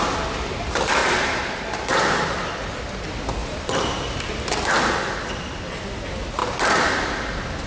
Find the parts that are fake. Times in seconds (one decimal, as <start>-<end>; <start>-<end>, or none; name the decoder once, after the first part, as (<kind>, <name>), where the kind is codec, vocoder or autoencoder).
1.0-2.5 (vocoder, BigVGAN v2); 3.4-4.3

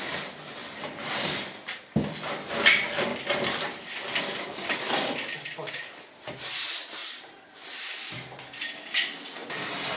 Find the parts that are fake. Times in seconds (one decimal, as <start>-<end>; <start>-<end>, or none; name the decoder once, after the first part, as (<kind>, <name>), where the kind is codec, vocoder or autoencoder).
3.1-5.7 (vocoder, BigVGAN v2); 7.0-8.6

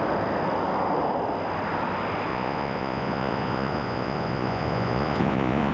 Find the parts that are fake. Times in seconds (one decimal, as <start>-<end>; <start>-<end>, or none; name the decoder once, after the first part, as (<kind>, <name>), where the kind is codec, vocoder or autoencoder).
2.3-5.7 (vocoder, Vocos)

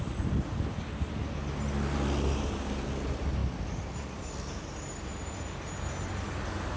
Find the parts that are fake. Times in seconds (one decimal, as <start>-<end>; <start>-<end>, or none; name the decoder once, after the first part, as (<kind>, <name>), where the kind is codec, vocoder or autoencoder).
none

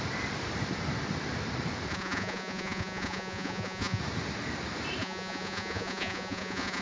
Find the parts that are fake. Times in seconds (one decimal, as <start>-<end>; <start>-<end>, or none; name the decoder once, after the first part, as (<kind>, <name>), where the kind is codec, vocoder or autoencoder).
1.9-4.0 (vocoder, Vocos); 5.0-6.8

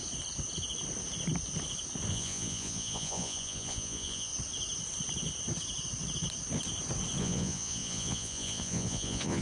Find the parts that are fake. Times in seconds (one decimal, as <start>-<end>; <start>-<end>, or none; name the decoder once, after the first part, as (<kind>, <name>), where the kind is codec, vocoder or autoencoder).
2.1-4.3 (vocoder, Vocos); 7.2-9.4

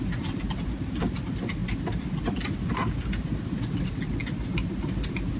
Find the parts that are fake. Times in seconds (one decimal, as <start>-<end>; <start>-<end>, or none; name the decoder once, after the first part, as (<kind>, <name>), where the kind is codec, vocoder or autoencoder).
none